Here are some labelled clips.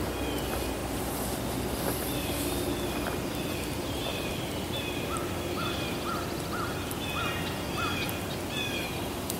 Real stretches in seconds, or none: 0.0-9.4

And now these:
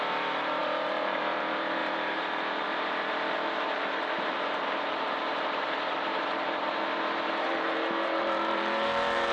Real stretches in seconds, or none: none